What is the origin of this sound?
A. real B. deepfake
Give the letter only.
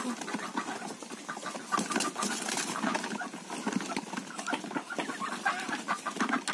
A